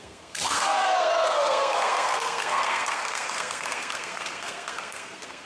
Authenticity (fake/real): fake